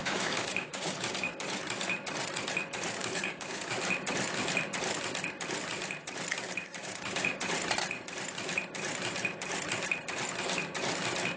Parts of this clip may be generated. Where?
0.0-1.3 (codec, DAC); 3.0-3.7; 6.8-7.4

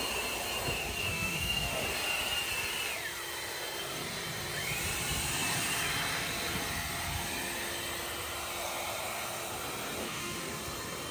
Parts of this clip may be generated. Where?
1.1-1.8 (autoencoder, DAC-VAE); 10.0-10.5